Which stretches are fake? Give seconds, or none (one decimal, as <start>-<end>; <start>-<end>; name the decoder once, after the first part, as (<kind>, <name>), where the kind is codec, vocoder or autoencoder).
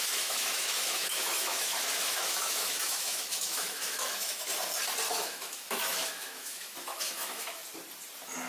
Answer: 0.0-4.5 (autoencoder, DAC-VAE); 5.1-7.6